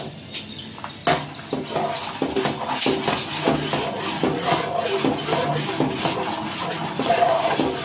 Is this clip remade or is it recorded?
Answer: recorded